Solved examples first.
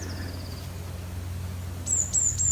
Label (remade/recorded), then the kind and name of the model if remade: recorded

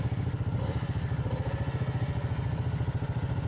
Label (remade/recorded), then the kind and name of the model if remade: recorded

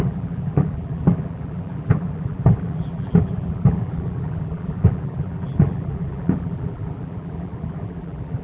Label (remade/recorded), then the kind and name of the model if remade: remade, vocoder, BigVGAN v2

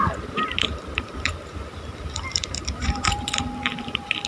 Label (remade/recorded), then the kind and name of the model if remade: remade, vocoder, BigVGAN v2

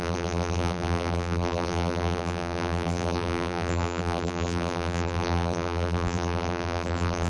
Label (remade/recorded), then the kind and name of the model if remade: remade, vocoder, BigVGAN v2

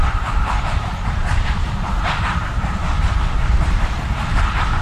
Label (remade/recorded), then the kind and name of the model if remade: remade, vocoder, BigVGAN v2